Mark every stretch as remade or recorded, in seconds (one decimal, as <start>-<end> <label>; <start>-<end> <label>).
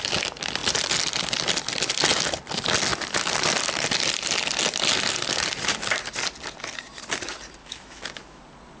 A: 0.0-7.6 recorded; 7.6-8.4 remade; 8.4-8.8 recorded